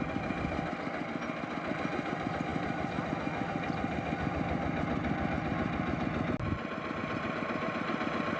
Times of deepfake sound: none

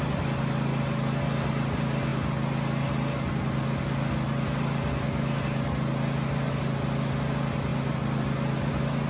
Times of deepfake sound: none

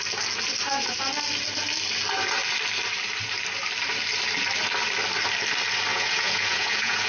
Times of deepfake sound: 5.9-7.1

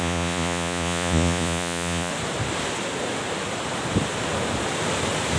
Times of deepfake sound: 0.0-2.1

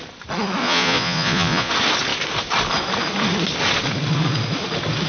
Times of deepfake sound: 0.6-1.7

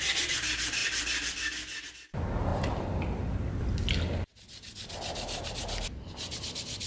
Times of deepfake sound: none